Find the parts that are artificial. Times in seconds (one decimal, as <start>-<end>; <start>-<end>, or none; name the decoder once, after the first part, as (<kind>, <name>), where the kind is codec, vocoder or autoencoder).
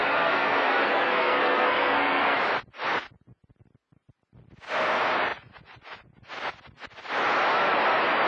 0.0-2.4 (codec, SNAC)